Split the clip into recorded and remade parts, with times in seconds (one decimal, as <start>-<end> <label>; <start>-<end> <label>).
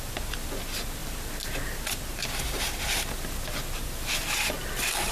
0.0-5.1 recorded